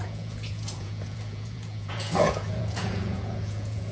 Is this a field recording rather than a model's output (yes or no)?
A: no